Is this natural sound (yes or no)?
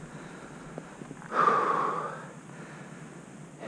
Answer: yes